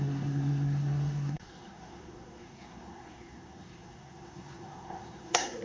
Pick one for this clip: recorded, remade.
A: remade